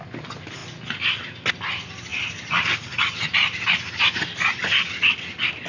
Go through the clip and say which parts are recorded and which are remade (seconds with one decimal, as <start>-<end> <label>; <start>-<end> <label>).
0.0-5.7 recorded